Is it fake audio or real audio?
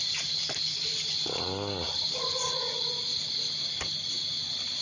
real